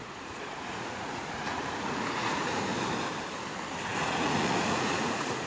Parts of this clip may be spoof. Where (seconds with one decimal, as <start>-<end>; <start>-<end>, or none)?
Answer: 0.0-2.7; 4.0-5.5